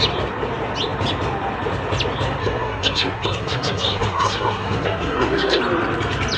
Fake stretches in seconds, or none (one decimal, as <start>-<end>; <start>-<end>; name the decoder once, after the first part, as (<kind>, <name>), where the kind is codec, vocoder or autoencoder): 2.4-5.6 (codec, SNAC)